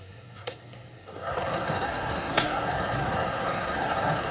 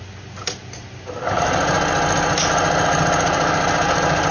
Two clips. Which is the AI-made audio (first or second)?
first